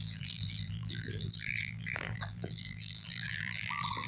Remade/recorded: remade